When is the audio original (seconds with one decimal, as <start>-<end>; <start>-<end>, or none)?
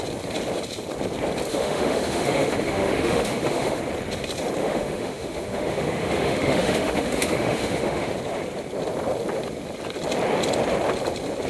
0.0-1.5; 3.8-4.6; 8.1-11.5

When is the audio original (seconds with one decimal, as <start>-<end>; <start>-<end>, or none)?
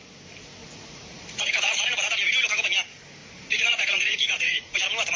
0.0-0.6; 1.8-3.2; 4.8-5.2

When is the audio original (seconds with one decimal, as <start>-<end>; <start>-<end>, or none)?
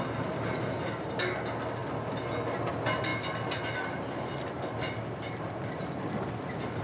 0.0-6.8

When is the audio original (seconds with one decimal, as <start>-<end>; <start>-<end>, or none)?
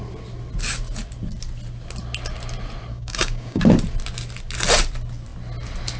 0.0-2.9; 3.6-6.0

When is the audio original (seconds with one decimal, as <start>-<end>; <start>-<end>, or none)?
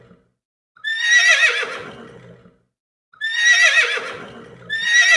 0.0-5.2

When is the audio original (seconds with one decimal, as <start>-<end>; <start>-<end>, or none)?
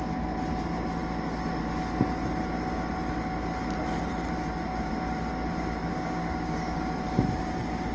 0.0-5.9; 6.8-7.9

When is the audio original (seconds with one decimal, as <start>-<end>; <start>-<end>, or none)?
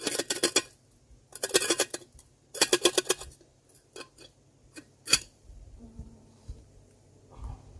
0.0-4.6; 7.1-7.8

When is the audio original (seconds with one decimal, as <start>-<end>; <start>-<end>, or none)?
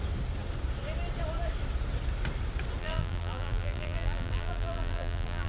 0.0-2.8